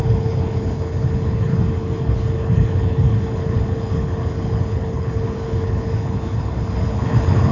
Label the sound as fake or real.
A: fake